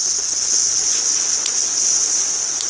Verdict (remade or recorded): recorded